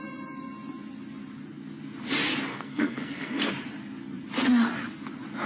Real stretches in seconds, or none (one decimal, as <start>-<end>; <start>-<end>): 0.0-2.5; 3.5-5.5